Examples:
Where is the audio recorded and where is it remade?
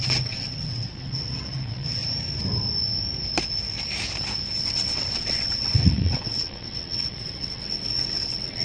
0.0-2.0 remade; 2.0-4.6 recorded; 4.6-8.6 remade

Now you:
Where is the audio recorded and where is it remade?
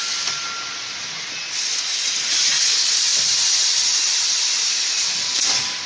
0.0-3.1 recorded; 3.1-5.4 remade; 5.4-5.9 recorded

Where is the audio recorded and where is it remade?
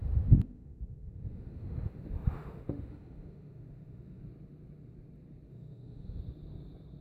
0.0-4.2 remade; 4.2-5.5 recorded; 5.5-6.2 remade; 6.2-7.0 recorded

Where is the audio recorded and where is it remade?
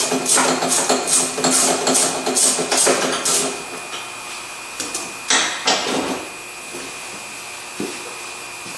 0.0-8.8 recorded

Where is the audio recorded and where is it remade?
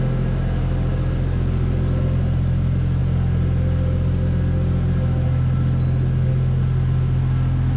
0.0-7.8 recorded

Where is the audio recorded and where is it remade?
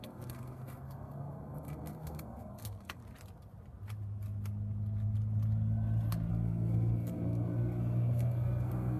0.0-3.0 remade; 3.0-6.3 recorded; 6.3-9.0 remade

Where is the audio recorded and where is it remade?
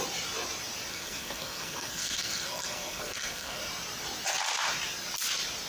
0.0-0.9 recorded; 0.9-3.6 remade; 3.6-5.7 recorded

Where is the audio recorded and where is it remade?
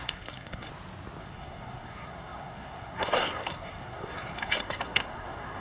0.0-0.7 remade; 0.7-1.2 recorded; 1.2-5.6 remade